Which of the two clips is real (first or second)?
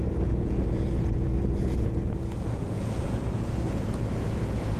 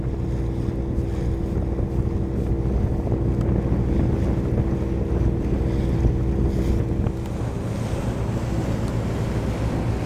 second